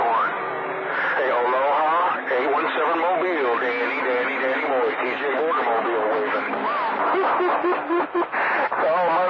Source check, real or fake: real